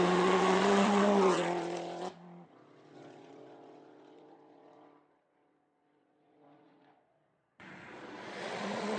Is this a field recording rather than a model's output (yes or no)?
no